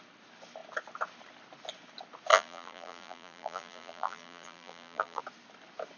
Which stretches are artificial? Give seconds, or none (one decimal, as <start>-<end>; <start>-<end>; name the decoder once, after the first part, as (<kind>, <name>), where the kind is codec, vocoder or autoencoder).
2.3-5.2 (vocoder, BigVGAN v2)